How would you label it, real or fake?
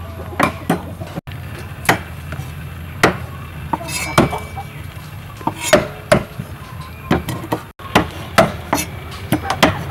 real